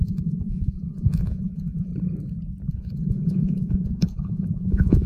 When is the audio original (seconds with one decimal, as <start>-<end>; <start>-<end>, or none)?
1.9-2.7